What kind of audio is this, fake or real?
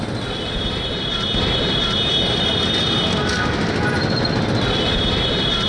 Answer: real